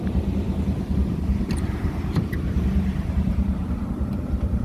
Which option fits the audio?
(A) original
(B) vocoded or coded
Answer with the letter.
B